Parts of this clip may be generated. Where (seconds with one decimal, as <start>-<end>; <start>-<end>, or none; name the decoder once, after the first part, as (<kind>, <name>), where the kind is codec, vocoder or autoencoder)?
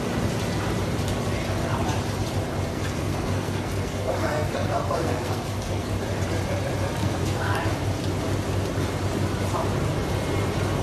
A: 2.7-5.9 (codec, SNAC); 7.0-7.6